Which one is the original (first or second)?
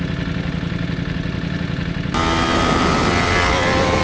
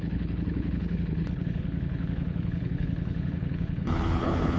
first